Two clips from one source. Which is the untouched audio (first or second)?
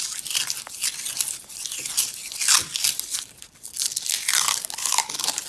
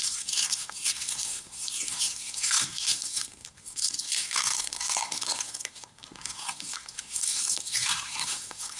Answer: first